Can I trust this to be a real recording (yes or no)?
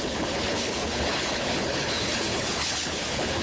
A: no